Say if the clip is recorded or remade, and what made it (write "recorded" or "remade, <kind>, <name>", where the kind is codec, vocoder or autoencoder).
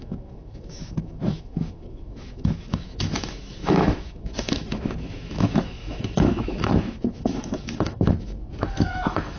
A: remade, autoencoder, DAC-VAE